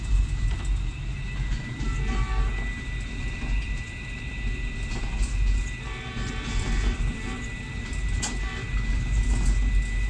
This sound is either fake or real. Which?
real